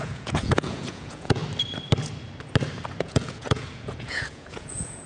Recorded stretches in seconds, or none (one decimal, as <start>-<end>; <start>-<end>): 1.4-3.0